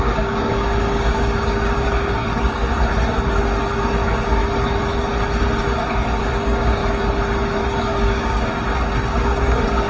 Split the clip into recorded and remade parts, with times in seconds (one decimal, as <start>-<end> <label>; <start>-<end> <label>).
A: 0.0-2.6 remade; 2.6-3.4 recorded; 3.4-4.4 remade; 4.4-6.2 recorded; 6.2-6.8 remade; 6.8-7.8 recorded; 7.8-9.9 remade